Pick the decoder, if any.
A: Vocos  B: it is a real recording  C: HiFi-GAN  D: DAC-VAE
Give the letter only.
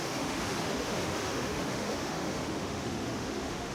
D